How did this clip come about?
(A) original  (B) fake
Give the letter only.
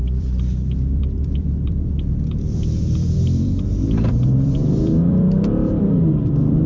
B